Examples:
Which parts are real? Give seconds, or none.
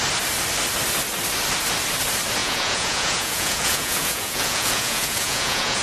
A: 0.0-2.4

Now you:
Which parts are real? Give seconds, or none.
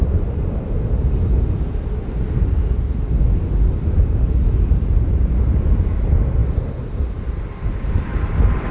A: 0.0-8.7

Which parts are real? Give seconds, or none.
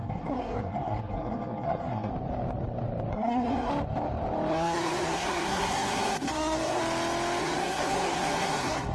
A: 2.1-3.1; 3.7-4.5; 6.8-7.4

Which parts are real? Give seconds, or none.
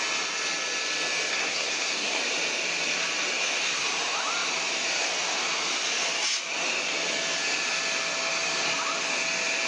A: 0.0-1.3; 2.2-9.7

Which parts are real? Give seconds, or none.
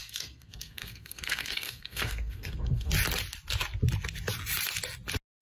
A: 2.9-5.4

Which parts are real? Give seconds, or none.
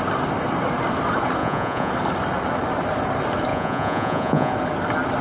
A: 0.0-1.4; 1.9-3.5; 4.5-5.2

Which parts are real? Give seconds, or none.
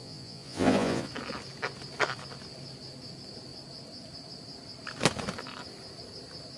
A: 1.1-6.6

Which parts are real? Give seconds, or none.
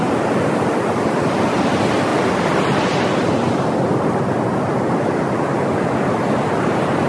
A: 0.0-7.1